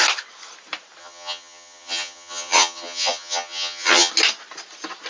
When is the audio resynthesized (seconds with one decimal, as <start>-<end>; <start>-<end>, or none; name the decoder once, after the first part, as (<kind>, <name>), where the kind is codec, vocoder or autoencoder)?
1.0-4.1 (vocoder, HiFi-GAN)